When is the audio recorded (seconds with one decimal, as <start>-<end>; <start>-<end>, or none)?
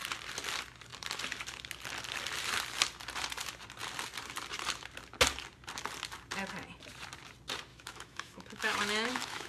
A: 0.0-7.7